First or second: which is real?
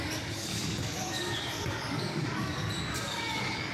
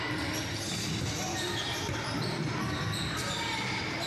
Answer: second